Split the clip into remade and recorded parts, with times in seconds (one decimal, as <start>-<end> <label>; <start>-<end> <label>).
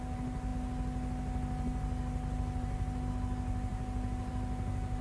0.0-5.0 recorded